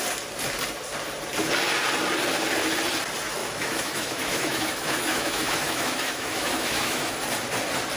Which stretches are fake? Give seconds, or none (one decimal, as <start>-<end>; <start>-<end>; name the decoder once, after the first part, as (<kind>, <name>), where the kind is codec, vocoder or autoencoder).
3.4-7.1 (autoencoder, DAC-VAE)

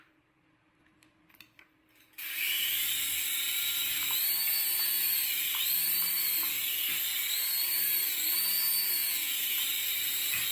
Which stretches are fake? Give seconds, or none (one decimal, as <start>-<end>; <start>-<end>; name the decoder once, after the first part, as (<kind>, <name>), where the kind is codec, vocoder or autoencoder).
9.0-9.6 (vocoder, Vocos)

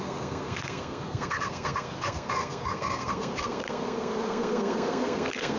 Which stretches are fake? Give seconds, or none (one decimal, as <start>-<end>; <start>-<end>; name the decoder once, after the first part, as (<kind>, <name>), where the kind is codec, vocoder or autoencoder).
0.0-5.6 (codec, SNAC)

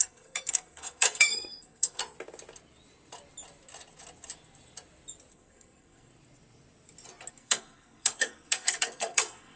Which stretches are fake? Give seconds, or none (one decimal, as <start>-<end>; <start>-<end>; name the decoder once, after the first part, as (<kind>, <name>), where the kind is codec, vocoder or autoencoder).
0.0-2.0 (codec, SNAC); 5.3-6.1; 7.3-9.6

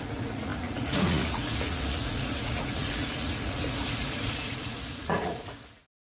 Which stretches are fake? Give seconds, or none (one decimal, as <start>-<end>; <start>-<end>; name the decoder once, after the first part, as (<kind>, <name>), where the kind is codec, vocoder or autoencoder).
0.0-6.1 (vocoder, Vocos)

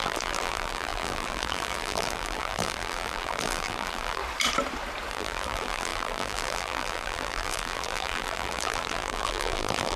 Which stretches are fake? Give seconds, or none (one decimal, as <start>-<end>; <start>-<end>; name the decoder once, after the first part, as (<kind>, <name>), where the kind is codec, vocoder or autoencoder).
0.0-4.2 (vocoder, BigVGAN v2); 5.1-10.0

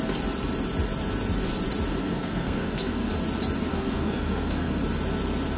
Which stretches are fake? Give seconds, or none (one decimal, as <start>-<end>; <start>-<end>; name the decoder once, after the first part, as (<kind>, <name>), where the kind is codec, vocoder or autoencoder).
2.0-3.1 (codec, SNAC); 3.7-4.8